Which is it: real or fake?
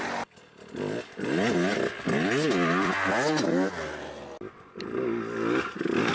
real